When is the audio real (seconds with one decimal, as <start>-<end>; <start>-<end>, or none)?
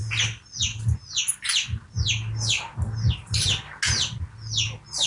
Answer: 0.0-5.1